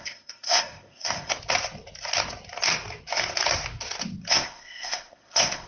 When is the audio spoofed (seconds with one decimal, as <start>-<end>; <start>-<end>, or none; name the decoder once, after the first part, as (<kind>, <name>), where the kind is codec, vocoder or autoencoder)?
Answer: 0.0-1.3 (codec, ZipCodec); 4.3-5.7